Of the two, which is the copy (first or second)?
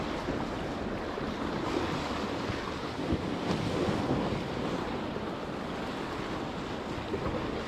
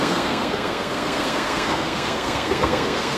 second